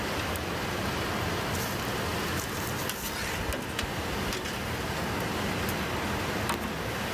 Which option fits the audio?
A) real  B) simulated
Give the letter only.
A